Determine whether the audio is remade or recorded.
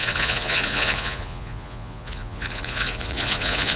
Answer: remade